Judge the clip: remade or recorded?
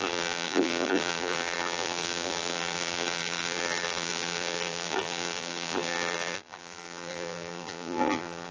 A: remade